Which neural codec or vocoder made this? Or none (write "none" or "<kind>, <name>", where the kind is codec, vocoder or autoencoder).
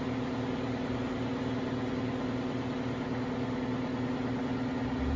none